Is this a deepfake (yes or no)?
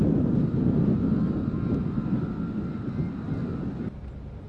no